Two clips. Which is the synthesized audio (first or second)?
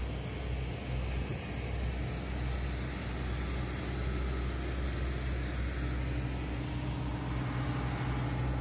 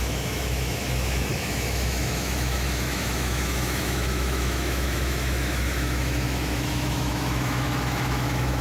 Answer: second